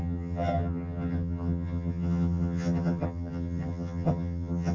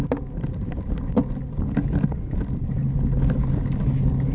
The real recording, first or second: second